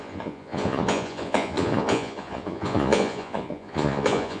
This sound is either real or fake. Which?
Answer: fake